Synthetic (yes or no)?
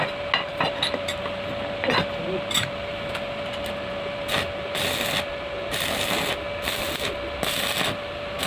no